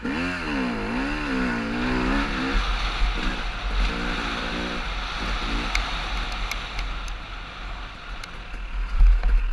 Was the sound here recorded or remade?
recorded